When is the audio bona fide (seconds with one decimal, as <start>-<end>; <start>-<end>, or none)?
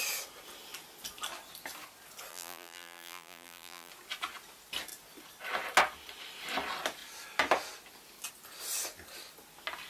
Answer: 0.0-2.3; 3.9-9.9